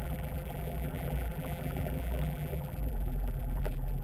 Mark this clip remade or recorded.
remade